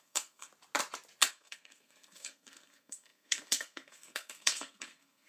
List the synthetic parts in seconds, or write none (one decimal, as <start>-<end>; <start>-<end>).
0.0-0.5; 1.3-5.3